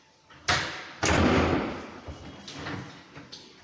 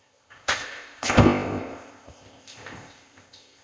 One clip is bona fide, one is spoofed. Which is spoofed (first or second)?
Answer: second